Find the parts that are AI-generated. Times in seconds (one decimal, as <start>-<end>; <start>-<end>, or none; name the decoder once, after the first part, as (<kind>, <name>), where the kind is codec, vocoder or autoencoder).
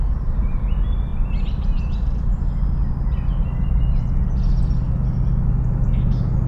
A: none